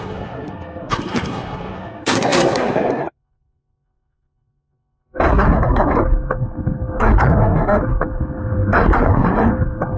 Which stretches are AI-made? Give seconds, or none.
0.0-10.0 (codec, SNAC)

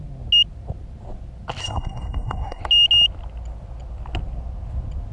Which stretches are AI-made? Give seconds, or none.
1.6-2.6 (codec, SNAC)

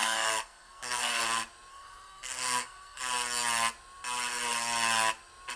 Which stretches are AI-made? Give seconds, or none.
0.0-1.2 (codec, SNAC); 1.7-3.0

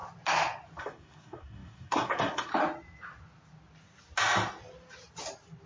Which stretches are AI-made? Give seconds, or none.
0.8-2.5 (codec, SNAC)

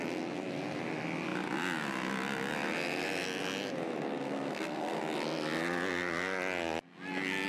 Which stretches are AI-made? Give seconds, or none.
4.2-5.0 (codec, SNAC)